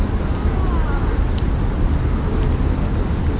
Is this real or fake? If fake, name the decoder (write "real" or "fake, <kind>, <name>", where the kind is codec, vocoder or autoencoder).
real